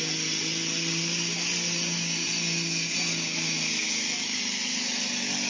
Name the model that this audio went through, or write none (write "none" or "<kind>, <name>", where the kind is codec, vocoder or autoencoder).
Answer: none